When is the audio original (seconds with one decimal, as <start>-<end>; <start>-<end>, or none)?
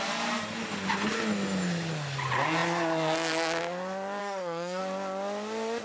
0.0-4.2; 4.8-5.8